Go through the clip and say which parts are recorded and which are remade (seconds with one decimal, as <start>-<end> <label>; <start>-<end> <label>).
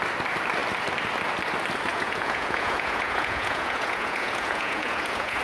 0.0-1.9 recorded; 1.9-5.4 remade